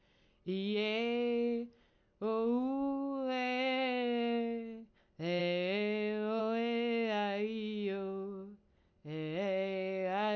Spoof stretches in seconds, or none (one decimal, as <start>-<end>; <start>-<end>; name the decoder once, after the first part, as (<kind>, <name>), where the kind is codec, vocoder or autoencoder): none